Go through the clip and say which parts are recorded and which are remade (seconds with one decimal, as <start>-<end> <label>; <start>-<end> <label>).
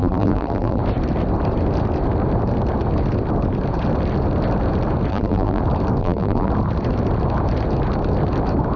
0.0-0.8 remade; 0.8-5.1 recorded; 5.1-5.6 remade; 5.6-6.0 recorded; 6.0-6.5 remade; 6.5-8.8 recorded